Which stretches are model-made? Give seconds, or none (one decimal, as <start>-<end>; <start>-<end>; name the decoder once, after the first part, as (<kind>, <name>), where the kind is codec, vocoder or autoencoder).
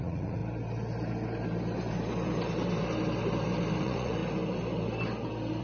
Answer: 0.0-0.4 (vocoder, Vocos); 3.8-4.2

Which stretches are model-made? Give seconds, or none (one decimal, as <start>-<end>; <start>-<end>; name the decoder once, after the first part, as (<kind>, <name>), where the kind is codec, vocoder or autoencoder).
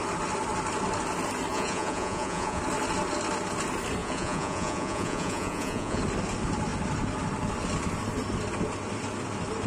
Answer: 1.5-2.6 (vocoder, Vocos); 4.0-6.0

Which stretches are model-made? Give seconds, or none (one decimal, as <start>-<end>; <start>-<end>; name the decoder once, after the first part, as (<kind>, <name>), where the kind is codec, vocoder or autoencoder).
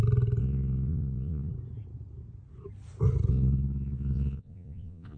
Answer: 0.4-1.5 (vocoder, Vocos); 3.3-5.2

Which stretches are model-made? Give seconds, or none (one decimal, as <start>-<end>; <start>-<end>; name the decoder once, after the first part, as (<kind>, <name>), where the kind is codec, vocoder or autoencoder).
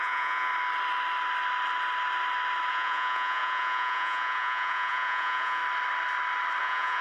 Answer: 0.0-0.5 (vocoder, Vocos); 2.7-5.6; 6.6-7.0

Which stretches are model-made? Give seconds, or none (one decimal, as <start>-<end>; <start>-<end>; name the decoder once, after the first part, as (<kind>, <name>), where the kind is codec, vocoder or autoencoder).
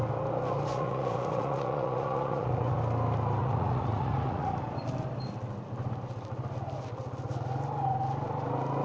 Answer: 0.7-2.8 (vocoder, Vocos); 3.4-4.6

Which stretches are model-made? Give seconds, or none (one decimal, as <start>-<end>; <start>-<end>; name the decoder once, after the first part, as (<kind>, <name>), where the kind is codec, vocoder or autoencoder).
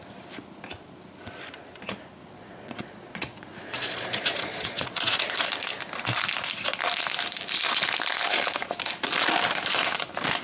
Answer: 2.2-5.2 (vocoder, Vocos)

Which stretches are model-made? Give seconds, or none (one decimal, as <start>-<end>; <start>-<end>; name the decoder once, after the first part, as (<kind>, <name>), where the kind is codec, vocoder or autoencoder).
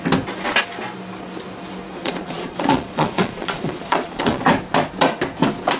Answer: 1.9-4.4 (vocoder, Vocos)